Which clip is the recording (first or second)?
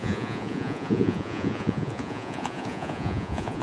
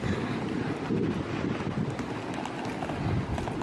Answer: second